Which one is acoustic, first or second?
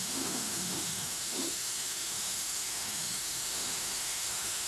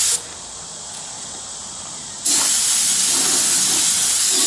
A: second